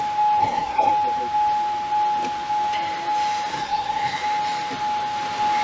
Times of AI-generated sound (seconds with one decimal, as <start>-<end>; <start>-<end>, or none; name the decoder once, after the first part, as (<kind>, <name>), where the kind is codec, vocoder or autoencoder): 0.4-0.9 (codec, SNAC); 3.5-4.2